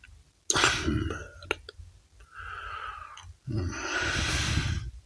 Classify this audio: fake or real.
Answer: real